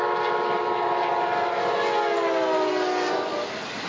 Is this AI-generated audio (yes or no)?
no